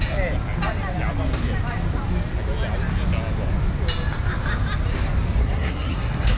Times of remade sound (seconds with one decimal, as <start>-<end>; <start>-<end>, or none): 5.4-6.4